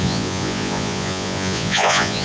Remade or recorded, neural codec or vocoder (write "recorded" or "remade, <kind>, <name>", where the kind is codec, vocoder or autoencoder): remade, vocoder, Vocos